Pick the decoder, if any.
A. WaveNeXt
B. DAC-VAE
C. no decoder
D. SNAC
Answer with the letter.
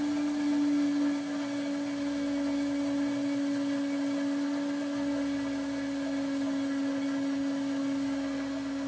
C